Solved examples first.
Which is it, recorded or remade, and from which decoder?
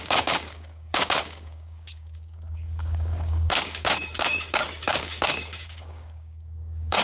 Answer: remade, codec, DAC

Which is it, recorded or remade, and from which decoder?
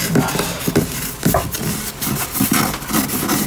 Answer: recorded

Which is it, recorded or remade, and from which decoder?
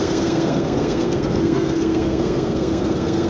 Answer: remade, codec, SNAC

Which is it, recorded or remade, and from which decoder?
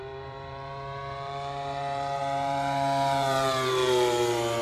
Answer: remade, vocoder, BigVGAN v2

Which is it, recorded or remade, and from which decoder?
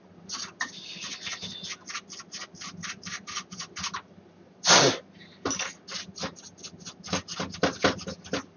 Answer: recorded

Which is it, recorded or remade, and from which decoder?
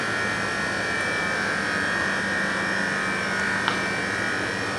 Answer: recorded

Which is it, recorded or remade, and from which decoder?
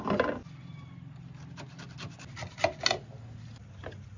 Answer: recorded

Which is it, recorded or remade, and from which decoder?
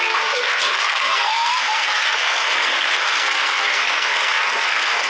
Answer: remade, codec, SNAC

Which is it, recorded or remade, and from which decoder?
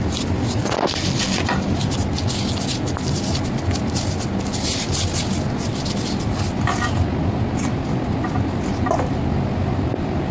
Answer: recorded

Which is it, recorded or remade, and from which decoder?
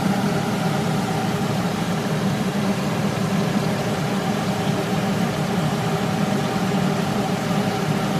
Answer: remade, vocoder, BigVGAN v2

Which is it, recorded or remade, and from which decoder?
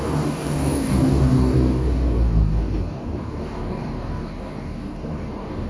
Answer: remade, codec, DAC